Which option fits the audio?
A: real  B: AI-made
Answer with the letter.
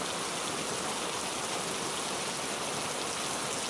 A